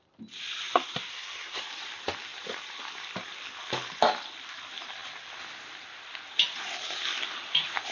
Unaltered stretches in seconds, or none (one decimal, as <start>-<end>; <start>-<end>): 0.0-1.1; 1.6-7.9